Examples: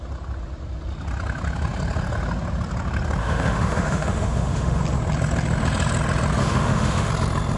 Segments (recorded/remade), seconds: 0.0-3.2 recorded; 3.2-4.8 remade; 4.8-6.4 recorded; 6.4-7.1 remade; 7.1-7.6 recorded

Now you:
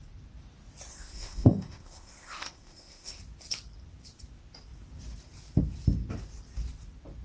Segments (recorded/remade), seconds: 0.0-0.9 recorded; 0.9-3.2 remade; 3.2-7.2 recorded

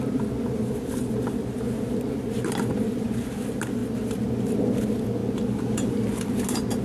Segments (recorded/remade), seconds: 0.0-6.8 recorded

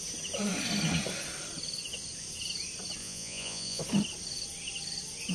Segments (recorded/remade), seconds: 0.0-3.0 recorded; 3.0-3.8 remade; 3.8-5.3 recorded

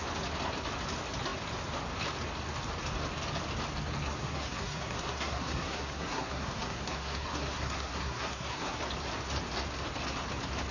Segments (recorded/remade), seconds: 0.0-4.2 recorded; 4.2-8.8 remade; 8.8-10.7 recorded

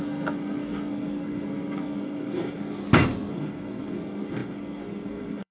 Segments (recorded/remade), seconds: 0.0-2.8 remade; 2.8-3.3 recorded; 3.3-5.5 remade

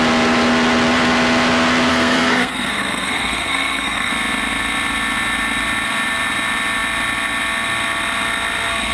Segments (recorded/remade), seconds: 0.0-1.9 recorded; 1.9-4.1 remade; 4.1-8.9 recorded